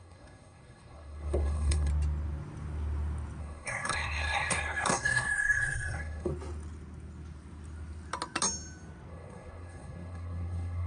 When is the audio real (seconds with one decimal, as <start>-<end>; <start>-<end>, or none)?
1.9-3.4; 6.3-9.1